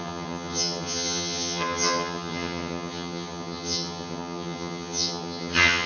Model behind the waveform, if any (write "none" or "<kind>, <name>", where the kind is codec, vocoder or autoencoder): vocoder, HiFi-GAN